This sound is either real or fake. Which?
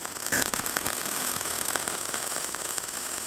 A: fake